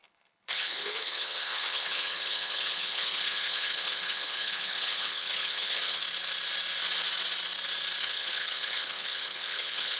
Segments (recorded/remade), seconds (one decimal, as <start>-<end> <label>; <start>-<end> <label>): 0.0-6.0 remade; 6.0-8.0 recorded; 8.0-10.0 remade